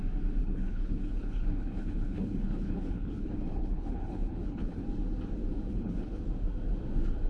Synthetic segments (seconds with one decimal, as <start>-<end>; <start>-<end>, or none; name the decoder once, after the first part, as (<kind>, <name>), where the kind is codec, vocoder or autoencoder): 0.4-4.8 (codec, HILCodec); 5.7-6.2